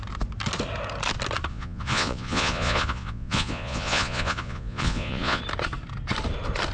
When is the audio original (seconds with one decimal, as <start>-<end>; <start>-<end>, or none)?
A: 0.0-1.5; 5.4-6.7